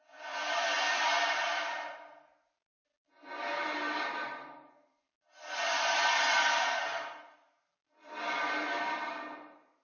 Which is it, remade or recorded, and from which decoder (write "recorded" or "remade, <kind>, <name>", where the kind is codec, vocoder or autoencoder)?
recorded